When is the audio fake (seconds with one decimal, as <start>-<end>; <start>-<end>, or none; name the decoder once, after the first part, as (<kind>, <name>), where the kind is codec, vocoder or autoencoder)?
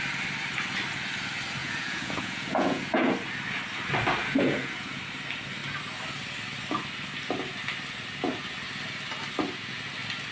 1.6-3.1 (vocoder, Vocos); 4.2-5.0